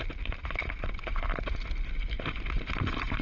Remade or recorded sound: recorded